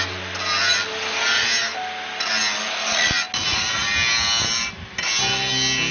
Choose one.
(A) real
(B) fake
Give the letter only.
A